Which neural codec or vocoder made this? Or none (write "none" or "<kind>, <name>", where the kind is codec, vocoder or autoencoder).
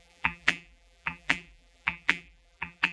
vocoder, BigVGAN v2